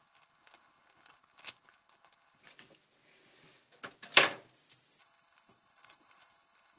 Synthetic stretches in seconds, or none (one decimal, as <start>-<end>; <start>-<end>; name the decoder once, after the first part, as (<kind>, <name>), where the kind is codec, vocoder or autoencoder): 0.0-2.4 (codec, HILCodec); 5.0-6.8